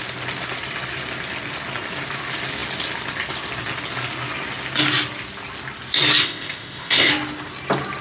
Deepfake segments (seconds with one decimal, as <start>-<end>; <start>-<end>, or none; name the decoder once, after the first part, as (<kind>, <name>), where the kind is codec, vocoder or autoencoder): 6.2-7.1 (codec, ZipCodec)